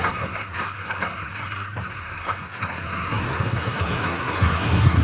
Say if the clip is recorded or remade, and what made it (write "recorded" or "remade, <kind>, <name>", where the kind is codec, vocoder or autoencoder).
remade, codec, SNAC